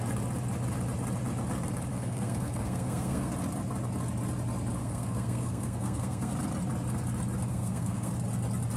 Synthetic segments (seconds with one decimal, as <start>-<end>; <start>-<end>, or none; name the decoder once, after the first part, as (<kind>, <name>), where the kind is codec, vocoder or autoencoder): 1.9-3.3 (codec, SNAC); 4.8-6.3; 7.5-8.1